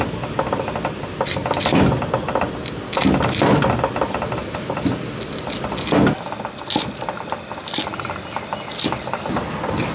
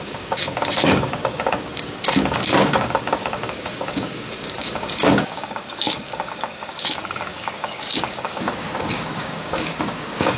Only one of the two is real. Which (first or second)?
first